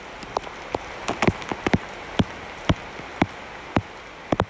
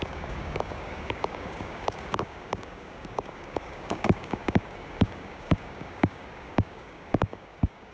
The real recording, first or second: first